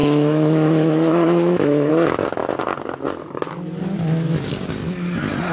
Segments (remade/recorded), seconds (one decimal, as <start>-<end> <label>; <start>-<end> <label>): 0.0-1.9 remade; 1.9-5.5 recorded